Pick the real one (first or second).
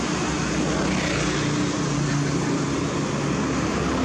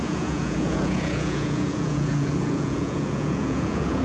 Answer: first